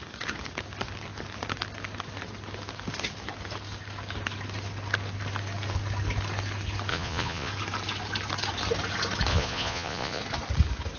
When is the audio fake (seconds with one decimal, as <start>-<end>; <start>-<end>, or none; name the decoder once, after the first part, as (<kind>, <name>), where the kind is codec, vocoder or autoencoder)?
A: 6.9-7.5 (vocoder, Vocos); 9.3-10.2